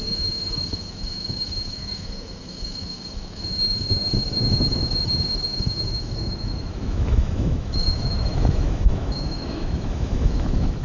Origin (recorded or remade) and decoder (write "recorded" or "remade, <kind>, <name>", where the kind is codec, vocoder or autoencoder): remade, autoencoder, DAC-VAE